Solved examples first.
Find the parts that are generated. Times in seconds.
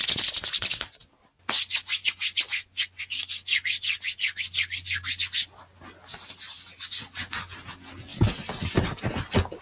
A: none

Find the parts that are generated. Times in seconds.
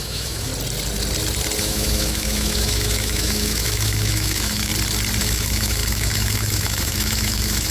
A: 0.0-0.5 (autoencoder, DAC-VAE); 1.6-4.7; 5.2-7.7